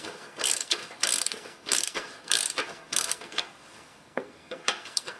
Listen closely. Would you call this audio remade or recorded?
remade